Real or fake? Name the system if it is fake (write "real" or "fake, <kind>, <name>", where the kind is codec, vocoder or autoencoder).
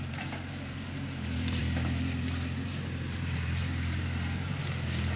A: fake, vocoder, BigVGAN v2